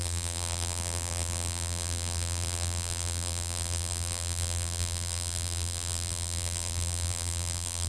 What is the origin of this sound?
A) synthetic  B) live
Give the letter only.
A